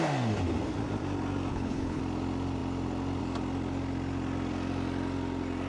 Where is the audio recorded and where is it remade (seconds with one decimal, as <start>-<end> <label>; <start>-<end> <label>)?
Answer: 0.0-1.5 recorded; 1.5-2.0 remade; 2.0-5.7 recorded